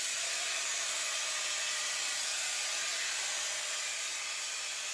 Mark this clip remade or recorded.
recorded